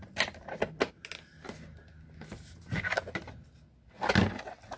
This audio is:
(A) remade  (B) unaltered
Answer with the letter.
B